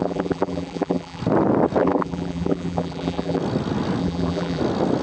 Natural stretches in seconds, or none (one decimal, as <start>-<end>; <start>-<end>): 1.2-1.8; 3.4-4.0; 4.6-5.0